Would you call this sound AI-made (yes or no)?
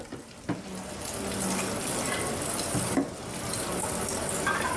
no